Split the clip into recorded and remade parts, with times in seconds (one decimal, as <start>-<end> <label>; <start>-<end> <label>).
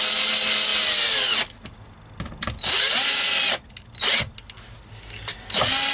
0.0-5.9 recorded